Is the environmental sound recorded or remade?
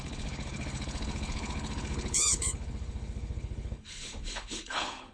remade